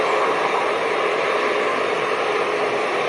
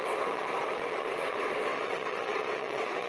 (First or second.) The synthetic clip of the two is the second